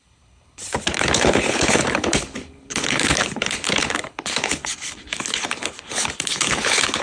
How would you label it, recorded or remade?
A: remade